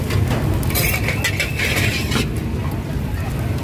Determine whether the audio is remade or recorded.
recorded